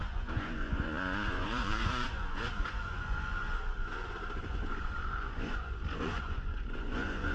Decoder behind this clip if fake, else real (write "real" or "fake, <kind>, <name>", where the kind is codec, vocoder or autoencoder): fake, vocoder, Vocos